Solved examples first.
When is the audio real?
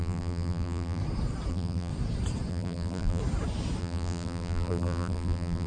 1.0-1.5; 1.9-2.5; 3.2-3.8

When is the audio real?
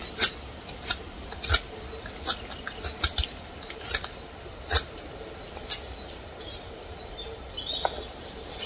0.0-8.7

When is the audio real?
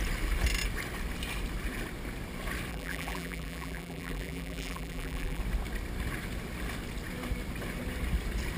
0.0-2.7; 5.4-8.6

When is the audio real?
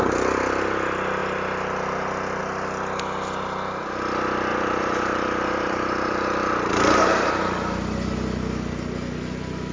0.0-4.5; 7.3-9.7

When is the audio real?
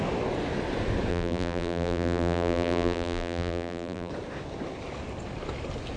0.0-1.1; 4.1-6.0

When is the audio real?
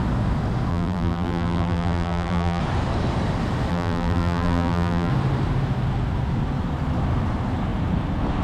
0.0-0.7; 2.6-3.7; 5.1-8.4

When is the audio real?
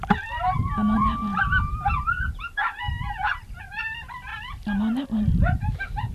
4.3-5.0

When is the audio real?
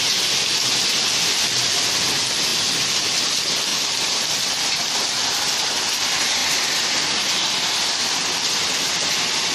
0.0-3.7; 5.8-6.4; 8.0-9.5